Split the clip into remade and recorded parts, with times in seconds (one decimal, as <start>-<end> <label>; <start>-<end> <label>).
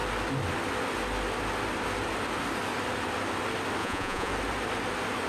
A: 0.0-3.8 recorded; 3.8-4.3 remade; 4.3-5.3 recorded